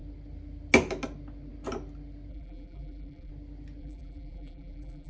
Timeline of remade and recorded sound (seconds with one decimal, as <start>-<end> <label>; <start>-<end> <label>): 0.0-2.3 recorded; 2.3-3.3 remade; 3.3-3.8 recorded; 3.8-5.1 remade